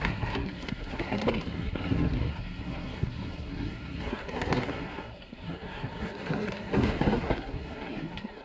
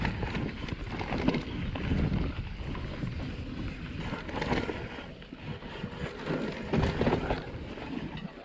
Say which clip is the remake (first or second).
first